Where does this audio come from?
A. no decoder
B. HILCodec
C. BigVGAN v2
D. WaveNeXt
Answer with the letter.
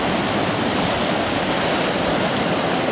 A